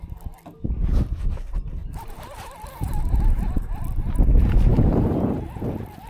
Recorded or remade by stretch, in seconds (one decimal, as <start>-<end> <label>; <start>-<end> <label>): 0.0-1.8 recorded; 1.8-3.8 remade; 3.8-4.7 recorded; 4.7-5.3 remade; 5.3-6.1 recorded